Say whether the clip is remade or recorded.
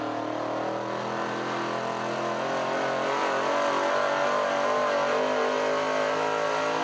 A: recorded